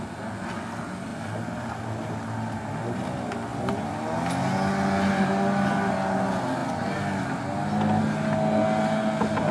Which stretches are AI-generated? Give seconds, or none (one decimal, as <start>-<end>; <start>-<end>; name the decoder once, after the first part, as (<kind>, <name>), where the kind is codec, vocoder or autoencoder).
none